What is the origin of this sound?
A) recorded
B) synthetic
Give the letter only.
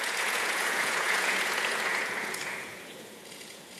B